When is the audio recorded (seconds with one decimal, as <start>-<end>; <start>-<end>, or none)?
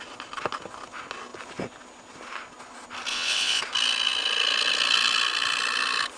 0.0-3.1; 3.6-6.2